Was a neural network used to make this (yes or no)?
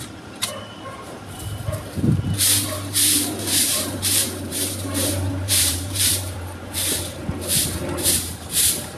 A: yes